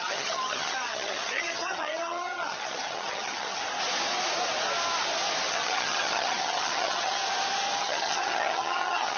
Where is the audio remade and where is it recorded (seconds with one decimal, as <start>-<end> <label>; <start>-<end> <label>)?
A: 0.0-3.6 remade; 3.6-5.5 recorded; 5.5-7.2 remade; 7.2-7.8 recorded; 7.8-9.2 remade